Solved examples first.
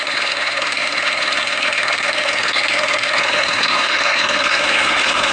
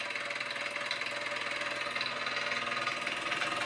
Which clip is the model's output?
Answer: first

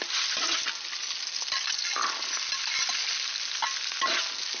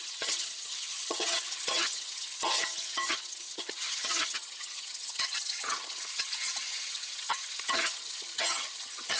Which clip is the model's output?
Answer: second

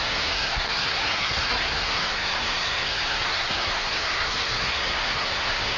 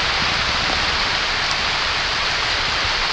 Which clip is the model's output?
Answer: first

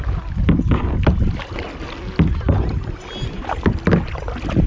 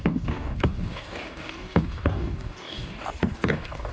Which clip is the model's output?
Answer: second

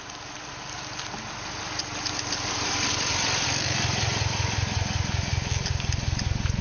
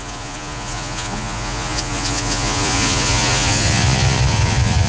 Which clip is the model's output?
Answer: second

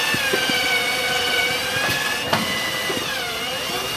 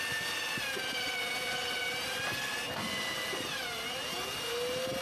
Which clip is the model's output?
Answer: first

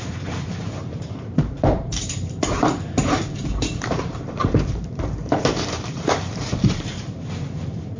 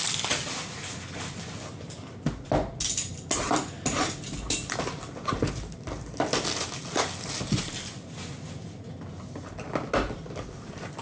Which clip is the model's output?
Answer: first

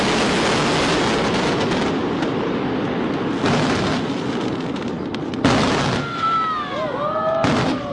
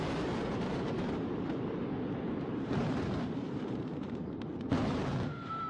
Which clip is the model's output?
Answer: second